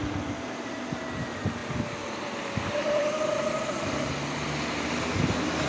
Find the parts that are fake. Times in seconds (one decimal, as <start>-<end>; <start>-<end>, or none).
none